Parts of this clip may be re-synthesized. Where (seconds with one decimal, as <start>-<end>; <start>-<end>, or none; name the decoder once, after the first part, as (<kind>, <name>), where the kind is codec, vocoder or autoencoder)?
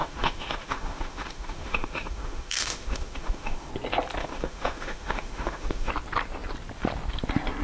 0.0-3.7 (autoencoder, DAC-VAE); 4.2-5.9